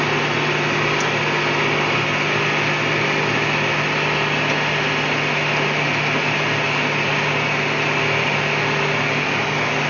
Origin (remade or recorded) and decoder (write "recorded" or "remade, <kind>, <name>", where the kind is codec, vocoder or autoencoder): recorded